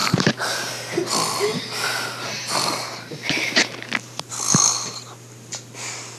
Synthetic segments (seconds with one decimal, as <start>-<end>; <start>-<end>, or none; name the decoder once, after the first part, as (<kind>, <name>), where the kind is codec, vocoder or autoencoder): 0.0-0.7 (vocoder, BigVGAN v2); 1.5-4.3

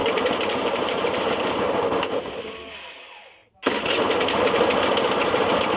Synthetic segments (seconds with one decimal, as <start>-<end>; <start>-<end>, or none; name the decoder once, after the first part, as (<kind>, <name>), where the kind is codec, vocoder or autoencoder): 0.0-1.3 (vocoder, BigVGAN v2)

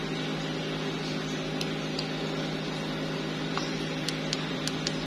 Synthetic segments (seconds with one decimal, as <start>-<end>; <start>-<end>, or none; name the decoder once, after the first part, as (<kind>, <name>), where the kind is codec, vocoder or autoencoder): 3.5-4.6 (vocoder, BigVGAN v2)

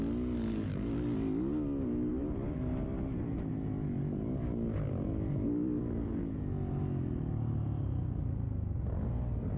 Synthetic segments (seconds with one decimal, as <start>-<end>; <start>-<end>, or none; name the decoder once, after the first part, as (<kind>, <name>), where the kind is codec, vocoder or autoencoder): none

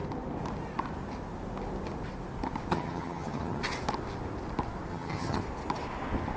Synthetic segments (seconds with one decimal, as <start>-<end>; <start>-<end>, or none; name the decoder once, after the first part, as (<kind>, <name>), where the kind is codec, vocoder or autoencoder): 2.7-3.6 (vocoder, HiFi-GAN); 4.9-5.4

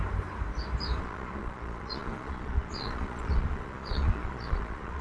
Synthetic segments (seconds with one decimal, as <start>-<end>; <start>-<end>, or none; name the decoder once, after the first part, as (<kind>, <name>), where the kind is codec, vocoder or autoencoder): 1.0-5.0 (vocoder, Vocos)